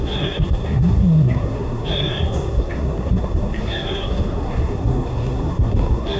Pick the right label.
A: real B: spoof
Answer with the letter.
B